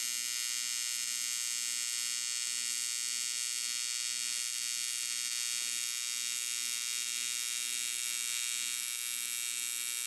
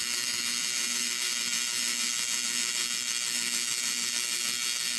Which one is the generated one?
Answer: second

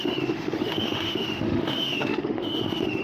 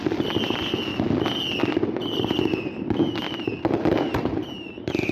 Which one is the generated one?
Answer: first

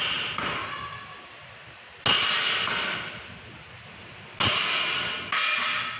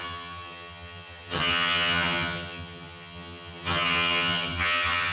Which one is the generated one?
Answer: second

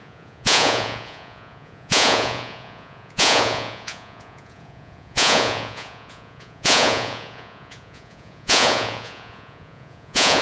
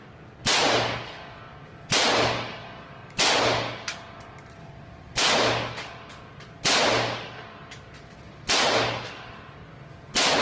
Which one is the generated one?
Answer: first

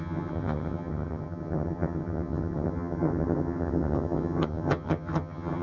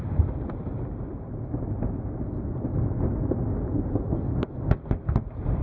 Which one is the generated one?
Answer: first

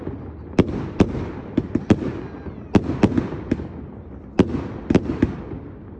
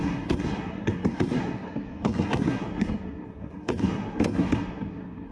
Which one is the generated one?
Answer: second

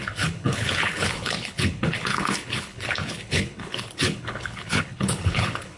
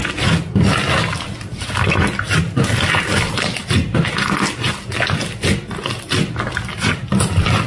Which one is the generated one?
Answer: first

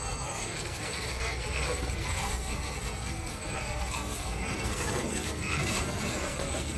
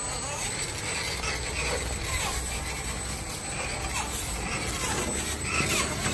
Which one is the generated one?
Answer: first